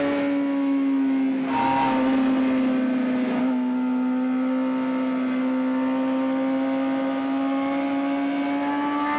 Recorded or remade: recorded